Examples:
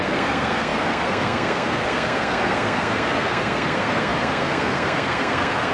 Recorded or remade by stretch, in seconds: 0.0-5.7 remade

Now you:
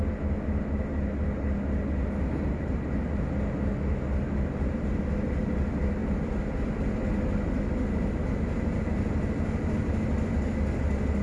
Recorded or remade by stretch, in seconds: 0.0-11.2 recorded

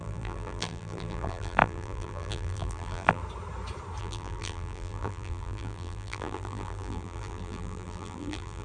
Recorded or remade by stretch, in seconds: 0.0-3.2 remade; 3.2-4.0 recorded; 4.0-8.6 remade

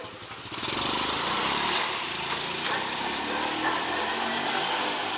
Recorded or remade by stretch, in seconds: 0.0-5.2 recorded

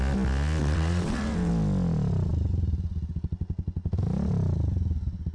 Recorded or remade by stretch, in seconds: 0.0-0.6 recorded; 0.6-1.5 remade; 1.5-5.3 recorded

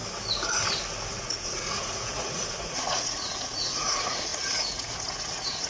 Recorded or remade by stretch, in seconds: 0.0-1.1 recorded; 1.1-5.7 remade